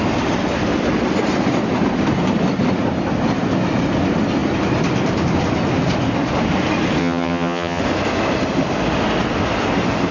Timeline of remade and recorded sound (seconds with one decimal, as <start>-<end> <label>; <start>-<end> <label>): 0.0-7.0 recorded; 7.0-7.8 remade; 7.8-10.1 recorded